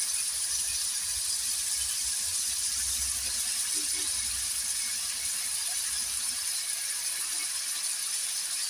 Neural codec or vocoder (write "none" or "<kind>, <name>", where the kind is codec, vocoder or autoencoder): none